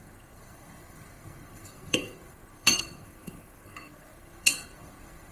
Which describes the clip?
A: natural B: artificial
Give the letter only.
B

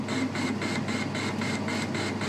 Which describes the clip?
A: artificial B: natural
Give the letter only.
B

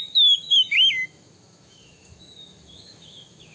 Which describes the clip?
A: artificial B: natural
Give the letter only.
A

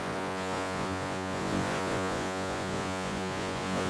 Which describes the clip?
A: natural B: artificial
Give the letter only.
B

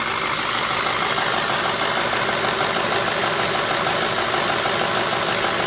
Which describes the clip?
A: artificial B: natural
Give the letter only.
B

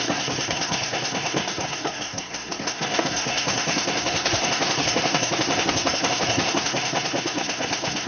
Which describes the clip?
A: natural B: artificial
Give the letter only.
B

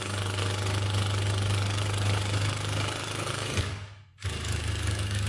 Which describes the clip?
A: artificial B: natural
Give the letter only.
A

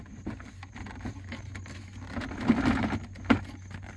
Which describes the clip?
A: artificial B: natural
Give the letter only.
B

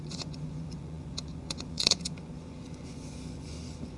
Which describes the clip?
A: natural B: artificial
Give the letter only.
B